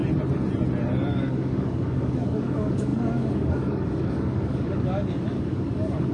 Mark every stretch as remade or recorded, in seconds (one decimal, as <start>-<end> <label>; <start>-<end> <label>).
0.0-1.1 recorded; 1.1-6.1 remade